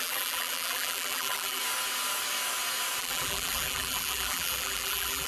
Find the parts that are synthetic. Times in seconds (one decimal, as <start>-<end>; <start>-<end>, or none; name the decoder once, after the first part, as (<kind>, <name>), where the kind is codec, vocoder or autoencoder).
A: 0.0-1.6 (vocoder, BigVGAN v2); 3.0-5.3